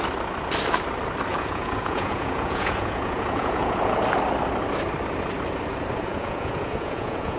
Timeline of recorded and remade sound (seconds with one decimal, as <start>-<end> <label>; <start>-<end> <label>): 0.0-1.3 recorded; 1.3-4.0 remade; 4.0-6.1 recorded; 6.1-7.4 remade

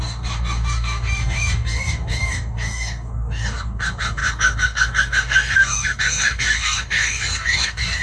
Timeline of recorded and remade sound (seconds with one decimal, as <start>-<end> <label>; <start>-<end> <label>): 0.0-8.0 remade

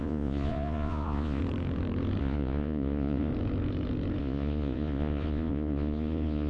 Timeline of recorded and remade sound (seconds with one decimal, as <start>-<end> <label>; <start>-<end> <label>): 0.0-1.4 remade; 1.4-2.2 recorded; 2.2-3.3 remade; 3.3-4.2 recorded; 4.2-6.5 remade

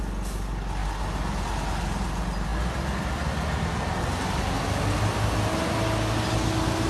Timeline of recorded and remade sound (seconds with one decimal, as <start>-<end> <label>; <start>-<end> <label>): 0.0-6.9 recorded

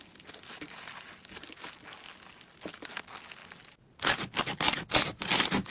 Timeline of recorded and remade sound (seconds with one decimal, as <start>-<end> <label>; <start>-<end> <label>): 0.0-5.7 recorded

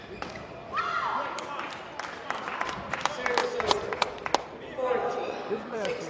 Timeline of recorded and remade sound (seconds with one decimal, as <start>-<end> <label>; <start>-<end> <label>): 0.0-3.4 recorded; 3.4-4.3 remade; 4.3-5.0 recorded; 5.0-6.1 remade

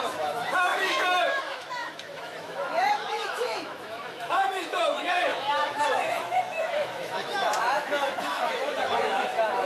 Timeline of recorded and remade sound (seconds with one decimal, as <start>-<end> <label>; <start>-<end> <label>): 0.0-9.7 remade

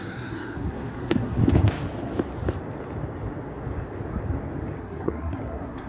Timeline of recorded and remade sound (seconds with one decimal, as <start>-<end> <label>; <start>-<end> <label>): 0.0-1.4 remade; 1.4-4.8 recorded; 4.8-5.9 remade